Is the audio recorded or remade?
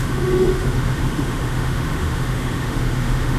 remade